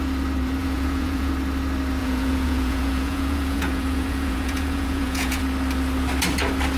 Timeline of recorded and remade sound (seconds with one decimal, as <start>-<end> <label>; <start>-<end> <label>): 0.0-0.6 recorded; 0.6-1.3 remade; 1.3-2.0 recorded; 2.0-5.4 remade; 5.4-6.8 recorded